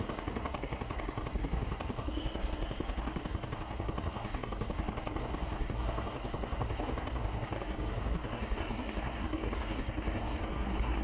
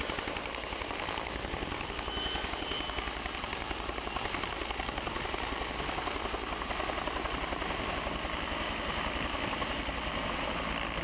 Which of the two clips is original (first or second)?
second